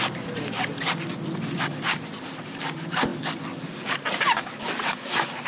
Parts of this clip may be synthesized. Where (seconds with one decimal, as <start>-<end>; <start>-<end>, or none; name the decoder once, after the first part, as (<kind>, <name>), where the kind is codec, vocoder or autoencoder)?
0.0-0.7 (vocoder, BigVGAN v2); 1.5-3.1; 3.8-5.5